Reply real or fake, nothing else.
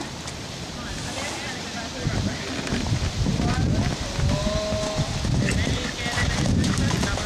real